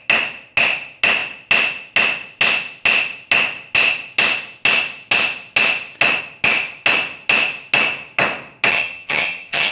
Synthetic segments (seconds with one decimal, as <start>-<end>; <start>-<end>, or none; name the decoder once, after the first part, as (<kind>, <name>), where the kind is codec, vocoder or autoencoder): 8.7-9.7 (vocoder, HiFi-GAN)